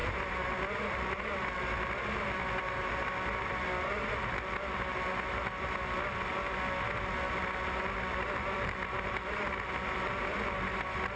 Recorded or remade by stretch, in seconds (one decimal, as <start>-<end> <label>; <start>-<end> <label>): 0.0-11.2 recorded